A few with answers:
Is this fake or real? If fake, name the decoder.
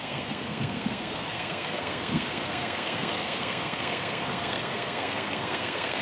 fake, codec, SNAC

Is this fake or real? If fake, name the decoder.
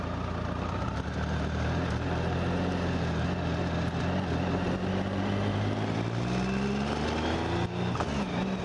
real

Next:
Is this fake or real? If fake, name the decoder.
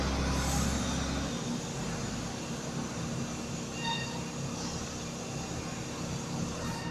real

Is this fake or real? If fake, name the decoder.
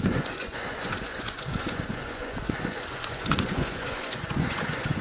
fake, vocoder, Vocos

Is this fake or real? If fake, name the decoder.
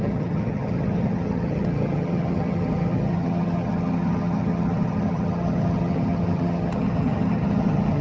fake, vocoder, HiFi-GAN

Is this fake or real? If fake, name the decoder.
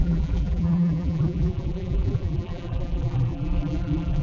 fake, vocoder, BigVGAN v2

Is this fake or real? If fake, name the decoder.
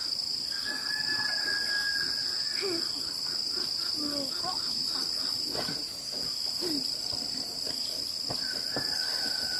real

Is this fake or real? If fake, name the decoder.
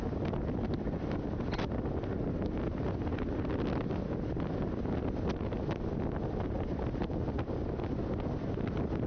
real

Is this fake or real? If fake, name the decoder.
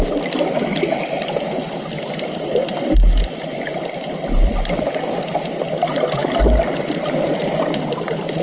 real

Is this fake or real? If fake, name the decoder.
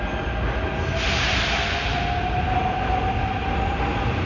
real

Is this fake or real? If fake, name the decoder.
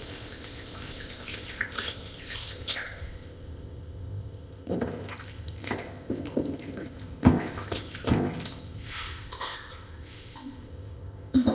fake, codec, ZipCodec